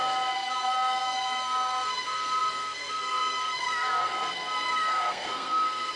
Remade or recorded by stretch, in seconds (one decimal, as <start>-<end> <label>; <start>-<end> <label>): 0.0-6.0 remade